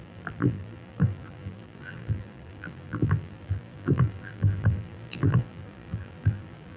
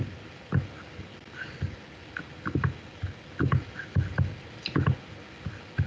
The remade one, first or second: first